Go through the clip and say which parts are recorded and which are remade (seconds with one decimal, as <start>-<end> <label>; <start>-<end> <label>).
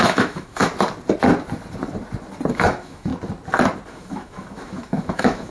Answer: 0.0-0.7 remade; 0.7-2.5 recorded; 2.5-3.1 remade; 3.1-3.9 recorded; 3.9-5.5 remade